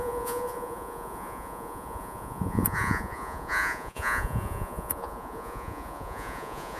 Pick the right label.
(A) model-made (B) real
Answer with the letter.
A